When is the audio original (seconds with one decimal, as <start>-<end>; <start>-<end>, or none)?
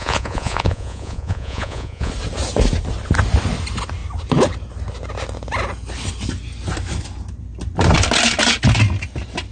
2.1-9.5